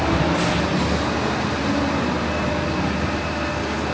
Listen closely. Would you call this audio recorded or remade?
recorded